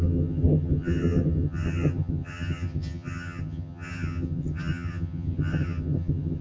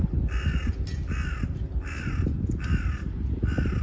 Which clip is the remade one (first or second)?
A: first